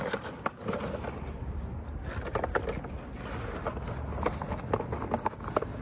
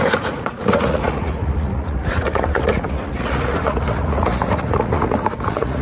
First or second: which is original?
first